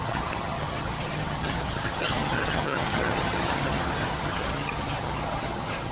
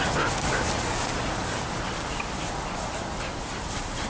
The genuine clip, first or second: second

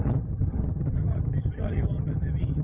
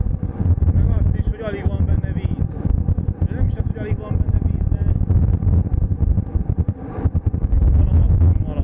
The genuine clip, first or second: second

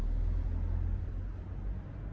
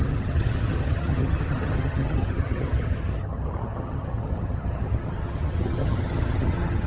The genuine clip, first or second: first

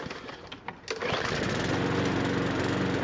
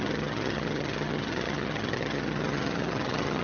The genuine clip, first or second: first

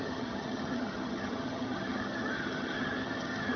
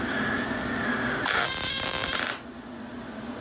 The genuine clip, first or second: second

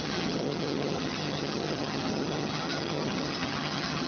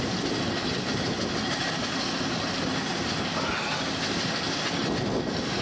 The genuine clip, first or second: second